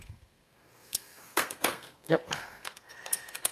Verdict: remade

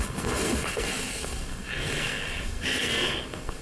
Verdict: remade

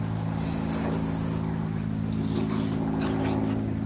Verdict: recorded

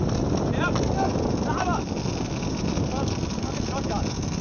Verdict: recorded